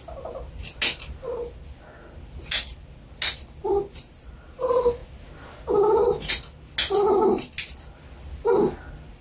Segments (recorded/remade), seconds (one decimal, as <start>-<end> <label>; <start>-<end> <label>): 0.0-9.2 recorded